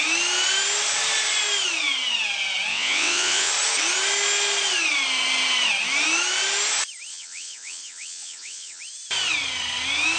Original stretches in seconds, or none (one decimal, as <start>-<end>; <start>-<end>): 0.0-2.7; 3.5-7.1; 8.8-10.2